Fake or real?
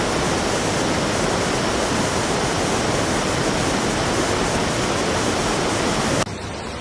real